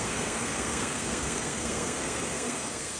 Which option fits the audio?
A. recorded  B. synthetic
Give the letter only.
B